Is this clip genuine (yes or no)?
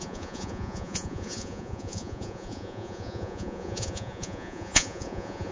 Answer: no